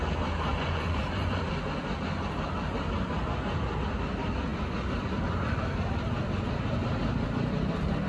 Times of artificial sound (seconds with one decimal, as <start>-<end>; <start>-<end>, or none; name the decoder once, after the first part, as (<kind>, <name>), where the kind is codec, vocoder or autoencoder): 0.5-1.4 (vocoder, Vocos)